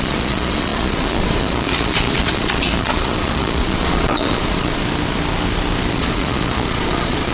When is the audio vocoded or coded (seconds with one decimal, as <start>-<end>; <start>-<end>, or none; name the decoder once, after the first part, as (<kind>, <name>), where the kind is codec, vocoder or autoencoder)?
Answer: 0.0-4.8 (vocoder, Vocos); 5.9-7.3